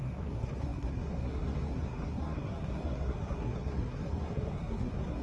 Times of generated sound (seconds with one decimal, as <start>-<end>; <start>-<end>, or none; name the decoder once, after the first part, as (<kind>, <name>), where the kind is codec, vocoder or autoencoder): 0.0-5.2 (codec, SNAC)